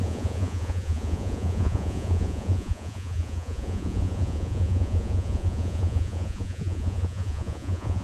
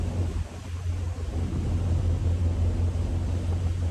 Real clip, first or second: second